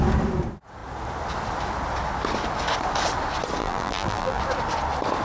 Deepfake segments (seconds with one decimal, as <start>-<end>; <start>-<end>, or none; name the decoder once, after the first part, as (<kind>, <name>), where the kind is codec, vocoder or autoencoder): 3.6-4.4 (vocoder, BigVGAN v2)